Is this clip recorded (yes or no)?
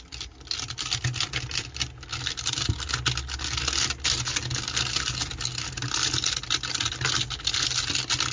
yes